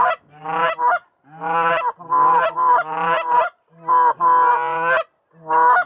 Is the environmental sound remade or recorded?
recorded